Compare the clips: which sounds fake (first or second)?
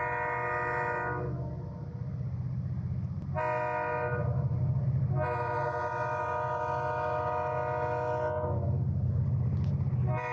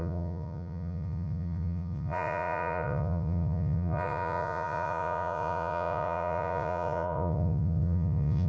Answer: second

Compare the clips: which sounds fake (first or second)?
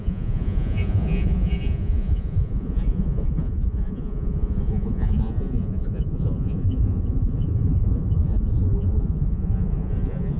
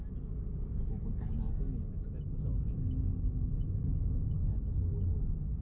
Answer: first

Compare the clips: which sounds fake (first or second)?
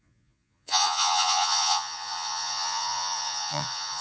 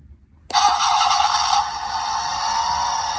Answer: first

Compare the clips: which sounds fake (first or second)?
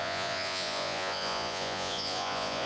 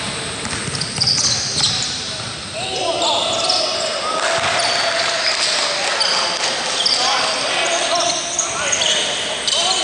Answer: first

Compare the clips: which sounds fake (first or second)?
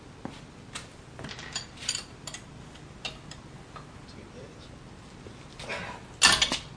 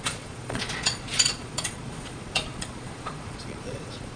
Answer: second